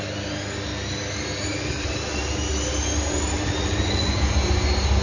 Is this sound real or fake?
real